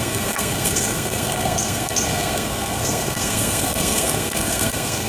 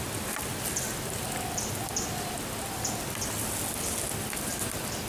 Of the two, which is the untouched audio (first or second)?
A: second